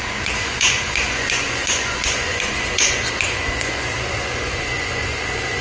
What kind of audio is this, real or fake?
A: fake